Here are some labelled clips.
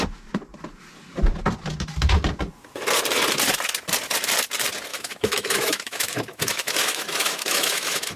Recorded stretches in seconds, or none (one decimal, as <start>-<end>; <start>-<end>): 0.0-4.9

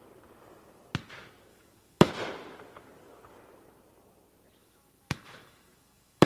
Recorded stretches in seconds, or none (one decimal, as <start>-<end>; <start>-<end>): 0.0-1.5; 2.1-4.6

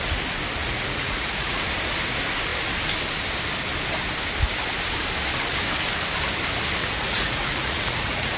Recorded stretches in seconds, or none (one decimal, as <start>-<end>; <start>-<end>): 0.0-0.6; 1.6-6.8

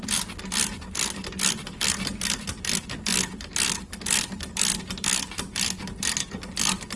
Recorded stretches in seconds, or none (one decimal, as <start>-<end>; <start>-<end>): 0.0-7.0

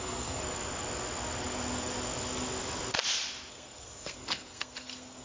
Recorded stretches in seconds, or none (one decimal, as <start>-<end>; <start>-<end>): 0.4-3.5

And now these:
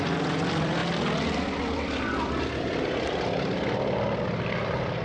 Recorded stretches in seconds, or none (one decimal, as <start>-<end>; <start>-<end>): 0.0-5.0

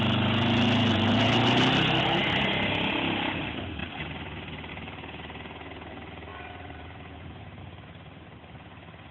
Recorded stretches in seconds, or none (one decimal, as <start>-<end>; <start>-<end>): 0.0-6.3; 7.6-9.1